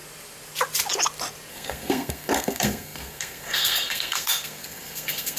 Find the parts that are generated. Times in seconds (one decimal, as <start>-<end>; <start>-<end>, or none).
1.5-5.4